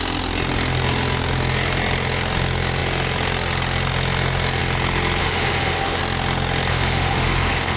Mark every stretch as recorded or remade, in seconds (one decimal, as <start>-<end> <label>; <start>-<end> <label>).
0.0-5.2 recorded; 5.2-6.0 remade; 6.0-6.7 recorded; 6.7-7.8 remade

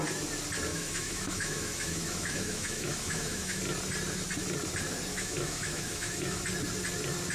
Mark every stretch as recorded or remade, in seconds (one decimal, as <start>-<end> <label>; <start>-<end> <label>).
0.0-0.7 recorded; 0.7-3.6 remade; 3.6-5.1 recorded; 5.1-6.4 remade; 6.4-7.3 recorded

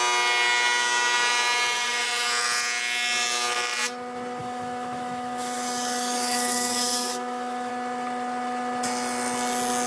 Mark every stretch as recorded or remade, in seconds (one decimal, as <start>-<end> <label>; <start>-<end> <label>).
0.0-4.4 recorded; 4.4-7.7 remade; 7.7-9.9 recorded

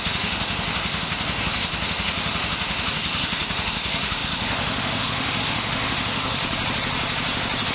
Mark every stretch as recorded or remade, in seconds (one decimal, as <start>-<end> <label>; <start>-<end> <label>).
0.0-6.4 remade; 6.4-7.7 recorded

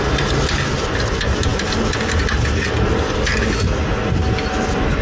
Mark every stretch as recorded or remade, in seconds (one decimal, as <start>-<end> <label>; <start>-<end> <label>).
0.0-5.0 recorded